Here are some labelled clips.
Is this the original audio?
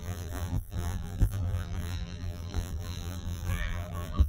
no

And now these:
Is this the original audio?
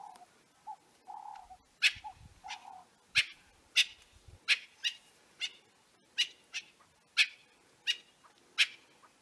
yes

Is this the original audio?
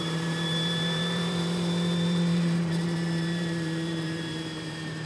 no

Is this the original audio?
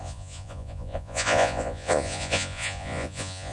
no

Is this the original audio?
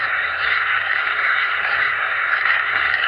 no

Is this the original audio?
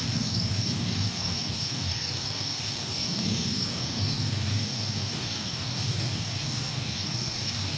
no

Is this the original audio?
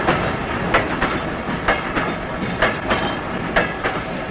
yes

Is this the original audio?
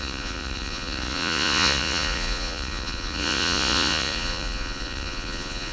no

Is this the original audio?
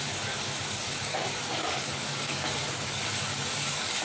no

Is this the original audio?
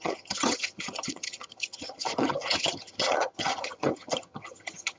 no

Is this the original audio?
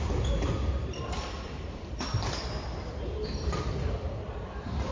no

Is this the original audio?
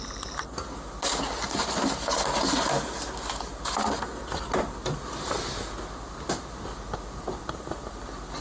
yes